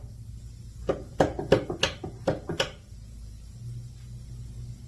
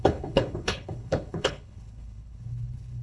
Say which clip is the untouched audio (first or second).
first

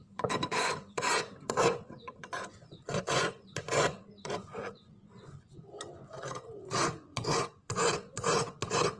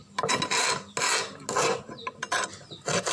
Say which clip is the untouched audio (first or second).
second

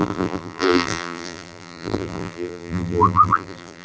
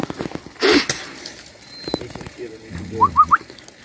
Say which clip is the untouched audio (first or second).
second